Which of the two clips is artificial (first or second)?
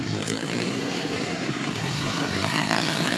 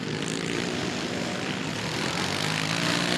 first